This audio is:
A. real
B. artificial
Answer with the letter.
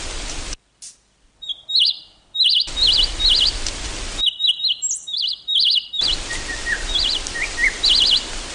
A